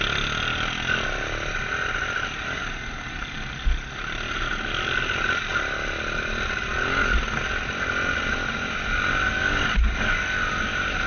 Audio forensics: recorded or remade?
recorded